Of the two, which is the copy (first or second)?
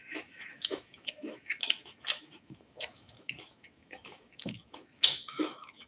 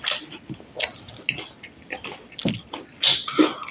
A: first